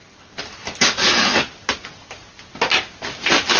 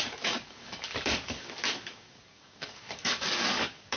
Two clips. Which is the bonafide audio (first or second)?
first